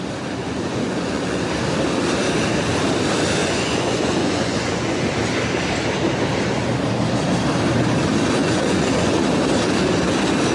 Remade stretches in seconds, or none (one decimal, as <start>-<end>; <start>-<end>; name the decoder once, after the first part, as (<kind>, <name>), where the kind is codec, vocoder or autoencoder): 0.4-1.4 (vocoder, Vocos); 3.4-5.1; 8.4-9.1